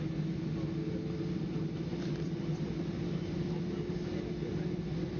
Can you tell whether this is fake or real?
real